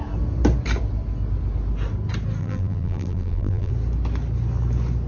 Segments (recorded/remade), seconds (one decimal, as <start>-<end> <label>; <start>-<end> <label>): 0.0-2.4 recorded; 2.4-3.7 remade; 3.7-5.1 recorded